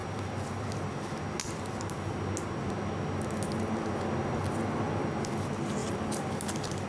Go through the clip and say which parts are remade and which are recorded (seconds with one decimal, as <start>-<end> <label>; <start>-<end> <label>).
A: 0.0-6.9 recorded